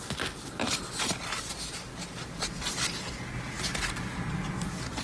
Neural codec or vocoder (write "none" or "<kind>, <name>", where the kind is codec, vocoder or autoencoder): none